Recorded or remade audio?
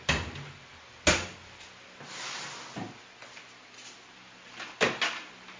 recorded